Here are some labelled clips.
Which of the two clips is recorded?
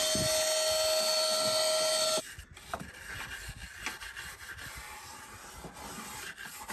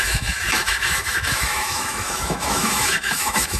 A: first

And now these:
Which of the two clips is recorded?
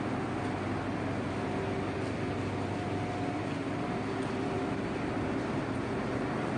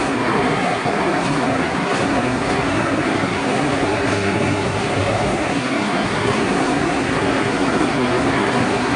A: first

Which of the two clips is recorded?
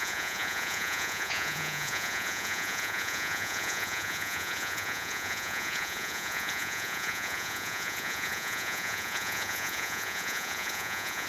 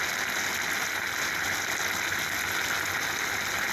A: second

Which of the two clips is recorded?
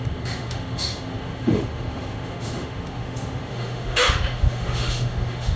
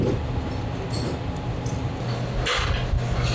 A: second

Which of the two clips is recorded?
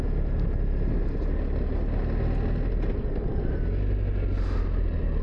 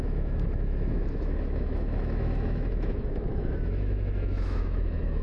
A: first